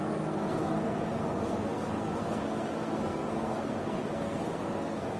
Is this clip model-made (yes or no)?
yes